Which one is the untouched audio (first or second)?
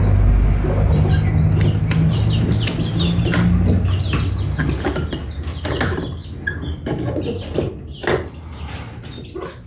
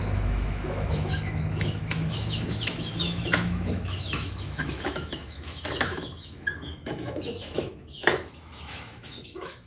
first